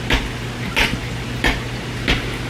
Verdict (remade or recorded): recorded